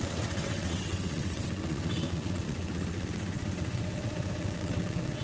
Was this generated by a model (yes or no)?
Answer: yes